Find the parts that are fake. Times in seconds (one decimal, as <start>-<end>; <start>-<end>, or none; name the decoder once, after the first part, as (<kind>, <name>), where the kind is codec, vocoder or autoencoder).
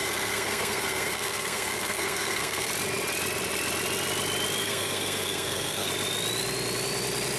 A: 0.0-2.7 (codec, SNAC); 4.6-5.9